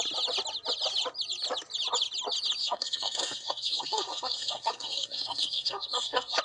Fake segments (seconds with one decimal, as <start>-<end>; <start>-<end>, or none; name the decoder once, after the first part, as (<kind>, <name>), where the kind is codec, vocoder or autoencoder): 2.6-6.4 (codec, SNAC)